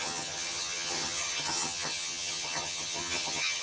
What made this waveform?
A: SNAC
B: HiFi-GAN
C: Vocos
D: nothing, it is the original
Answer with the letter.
B